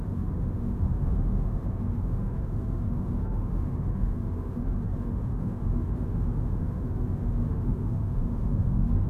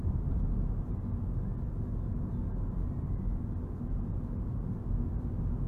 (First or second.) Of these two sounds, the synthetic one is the first